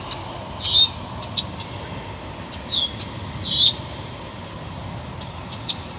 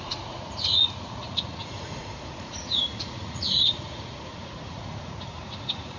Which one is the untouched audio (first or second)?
first